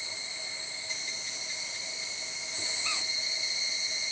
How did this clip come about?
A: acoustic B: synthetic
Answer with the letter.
A